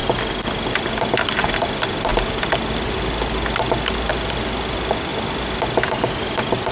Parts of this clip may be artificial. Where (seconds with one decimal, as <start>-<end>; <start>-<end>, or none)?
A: none